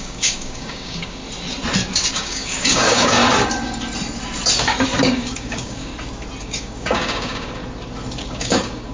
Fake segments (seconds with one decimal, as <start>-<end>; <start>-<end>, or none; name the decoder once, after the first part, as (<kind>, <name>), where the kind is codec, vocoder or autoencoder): 0.0-1.2 (codec, DAC); 2.1-3.2; 5.0-5.9; 6.4-7.6; 8.2-8.9